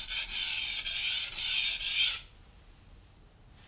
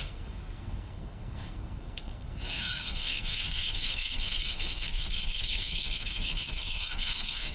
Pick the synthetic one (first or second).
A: second